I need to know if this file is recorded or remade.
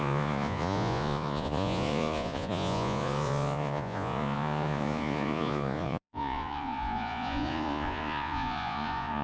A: remade